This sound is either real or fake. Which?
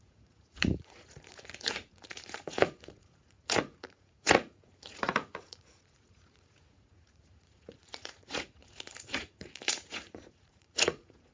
fake